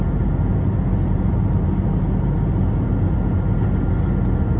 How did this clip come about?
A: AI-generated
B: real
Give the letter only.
B